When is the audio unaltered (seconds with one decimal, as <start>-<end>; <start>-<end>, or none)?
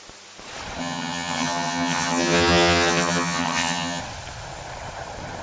0.0-0.8; 4.0-5.4